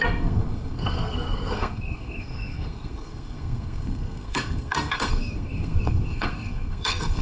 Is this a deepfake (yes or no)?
yes